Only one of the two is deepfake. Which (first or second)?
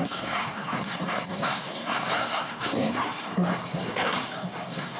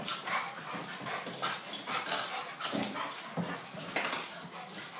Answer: first